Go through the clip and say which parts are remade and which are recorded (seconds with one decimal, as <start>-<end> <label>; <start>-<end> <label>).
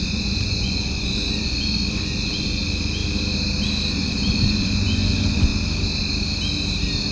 0.0-3.0 remade; 3.0-3.9 recorded; 3.9-5.5 remade; 5.5-7.1 recorded